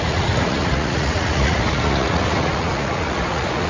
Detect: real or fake fake